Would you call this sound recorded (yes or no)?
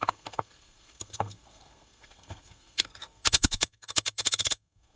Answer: no